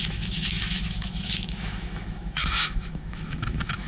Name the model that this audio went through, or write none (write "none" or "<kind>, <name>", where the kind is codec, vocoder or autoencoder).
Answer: autoencoder, DAC-VAE